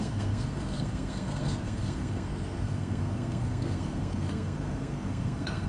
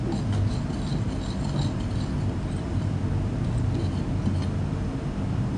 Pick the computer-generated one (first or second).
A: first